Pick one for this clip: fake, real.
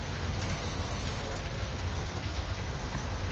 fake